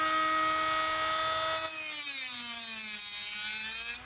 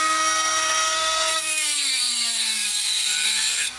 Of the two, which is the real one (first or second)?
first